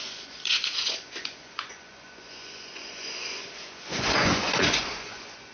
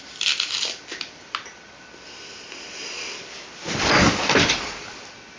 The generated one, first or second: first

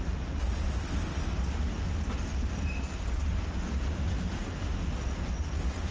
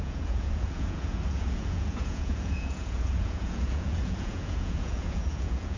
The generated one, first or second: second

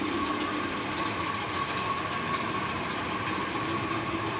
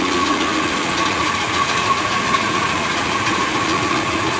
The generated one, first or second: second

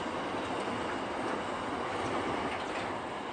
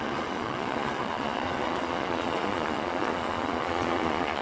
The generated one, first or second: second